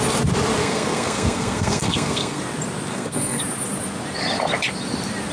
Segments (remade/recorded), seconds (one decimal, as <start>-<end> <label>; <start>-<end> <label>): 0.0-0.6 recorded; 0.6-2.4 remade; 2.4-2.9 recorded; 2.9-3.4 remade; 3.4-5.3 recorded